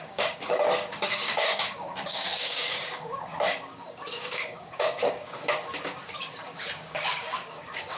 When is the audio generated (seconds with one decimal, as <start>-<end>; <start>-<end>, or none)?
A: 0.0-8.0